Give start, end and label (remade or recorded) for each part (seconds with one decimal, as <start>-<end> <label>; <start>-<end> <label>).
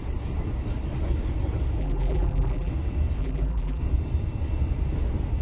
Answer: 0.0-1.8 recorded; 1.8-2.7 remade; 2.7-3.2 recorded; 3.2-3.8 remade; 3.8-5.4 recorded